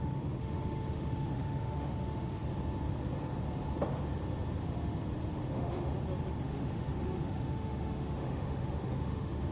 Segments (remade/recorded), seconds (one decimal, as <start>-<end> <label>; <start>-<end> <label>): 0.0-2.4 remade; 2.4-5.5 recorded; 5.5-5.9 remade; 5.9-6.4 recorded; 6.4-9.5 remade